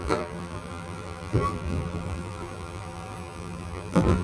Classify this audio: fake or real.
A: fake